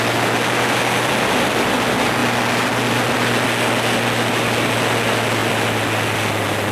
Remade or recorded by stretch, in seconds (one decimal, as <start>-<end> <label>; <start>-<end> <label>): 0.0-6.7 recorded